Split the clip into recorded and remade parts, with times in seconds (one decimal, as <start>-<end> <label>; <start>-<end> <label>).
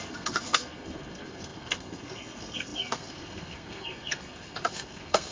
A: 0.0-5.3 remade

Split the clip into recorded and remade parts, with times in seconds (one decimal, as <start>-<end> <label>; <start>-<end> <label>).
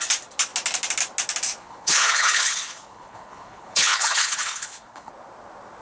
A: 0.0-1.6 recorded; 1.6-5.1 remade; 5.1-5.8 recorded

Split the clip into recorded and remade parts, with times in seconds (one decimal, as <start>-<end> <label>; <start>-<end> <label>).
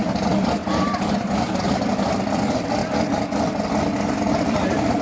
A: 0.0-0.6 remade; 0.6-1.1 recorded; 1.1-2.8 remade; 2.8-4.3 recorded; 4.3-5.0 remade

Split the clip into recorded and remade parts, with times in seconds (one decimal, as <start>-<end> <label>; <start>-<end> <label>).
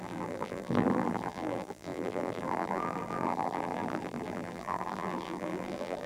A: 0.0-6.1 remade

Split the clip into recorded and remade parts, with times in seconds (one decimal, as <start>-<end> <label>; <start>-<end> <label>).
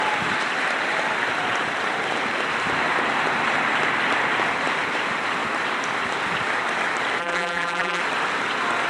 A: 0.0-7.2 recorded; 7.2-8.0 remade; 8.0-8.9 recorded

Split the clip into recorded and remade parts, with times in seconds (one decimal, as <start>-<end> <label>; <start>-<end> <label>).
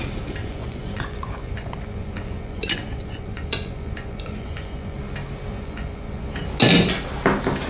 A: 0.0-0.4 recorded; 0.4-5.0 remade; 5.0-5.5 recorded; 5.5-6.3 remade; 6.3-7.7 recorded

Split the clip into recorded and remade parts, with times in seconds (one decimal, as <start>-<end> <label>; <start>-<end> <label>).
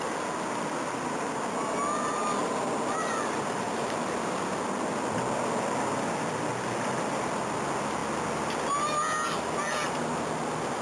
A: 0.0-10.8 recorded